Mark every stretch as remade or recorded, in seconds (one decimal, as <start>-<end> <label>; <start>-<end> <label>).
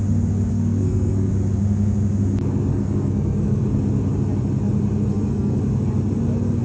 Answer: 0.0-0.5 recorded; 0.5-1.3 remade; 1.3-2.7 recorded; 2.7-3.6 remade; 3.6-5.1 recorded; 5.1-5.6 remade; 5.6-6.6 recorded